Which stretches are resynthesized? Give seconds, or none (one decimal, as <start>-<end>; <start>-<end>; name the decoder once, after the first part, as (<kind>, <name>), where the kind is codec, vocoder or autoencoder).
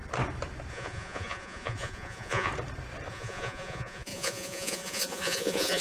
0.7-2.5 (vocoder, Vocos); 3.1-5.8